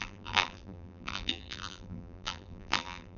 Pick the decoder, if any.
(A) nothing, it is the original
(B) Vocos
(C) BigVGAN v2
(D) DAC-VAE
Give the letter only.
C